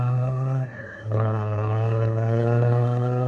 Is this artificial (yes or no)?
yes